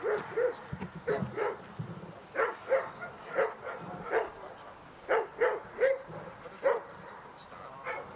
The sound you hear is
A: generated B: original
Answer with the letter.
B